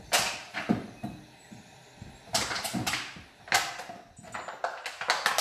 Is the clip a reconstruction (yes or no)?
no